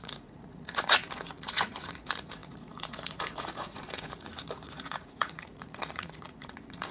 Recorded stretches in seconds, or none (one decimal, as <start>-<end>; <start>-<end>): none